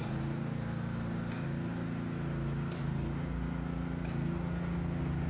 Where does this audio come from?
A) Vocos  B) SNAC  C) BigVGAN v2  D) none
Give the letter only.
D